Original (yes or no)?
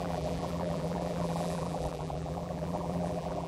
no